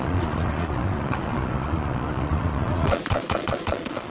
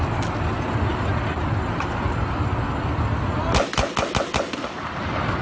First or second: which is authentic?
second